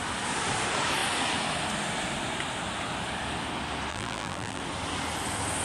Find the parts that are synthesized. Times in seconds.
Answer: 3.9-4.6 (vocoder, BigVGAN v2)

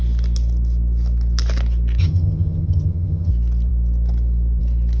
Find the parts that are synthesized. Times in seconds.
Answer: 2.0-3.3 (vocoder, HiFi-GAN)

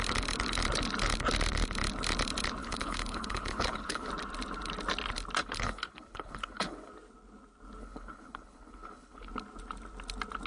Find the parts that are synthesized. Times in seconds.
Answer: 2.6-4.1 (codec, HILCodec); 5.4-6.9; 7.8-9.3

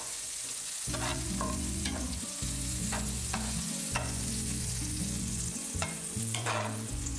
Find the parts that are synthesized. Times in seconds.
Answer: 0.0-7.2 (vocoder, Vocos)